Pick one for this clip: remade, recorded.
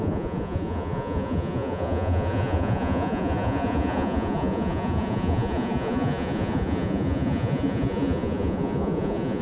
remade